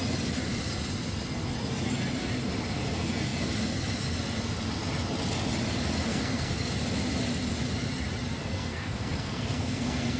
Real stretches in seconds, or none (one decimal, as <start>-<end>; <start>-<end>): 0.0-6.1; 6.7-8.4

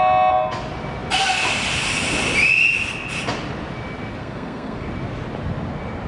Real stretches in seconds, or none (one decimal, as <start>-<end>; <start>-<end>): 0.0-4.2; 4.9-6.1

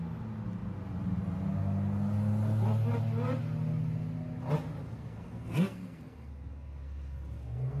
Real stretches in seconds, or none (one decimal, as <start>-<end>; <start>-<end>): 0.0-4.8

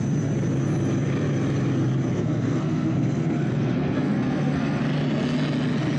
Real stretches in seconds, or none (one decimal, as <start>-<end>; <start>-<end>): 0.0-2.1; 4.8-6.0

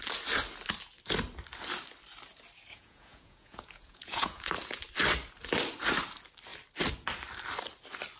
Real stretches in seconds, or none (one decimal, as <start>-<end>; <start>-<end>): 0.0-2.7; 4.5-8.2